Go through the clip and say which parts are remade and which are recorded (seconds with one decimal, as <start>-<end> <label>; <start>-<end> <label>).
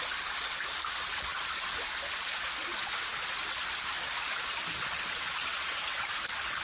0.0-6.6 recorded